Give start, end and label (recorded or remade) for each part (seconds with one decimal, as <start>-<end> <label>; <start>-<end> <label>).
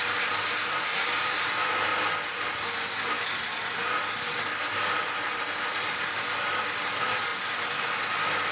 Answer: 0.0-8.5 recorded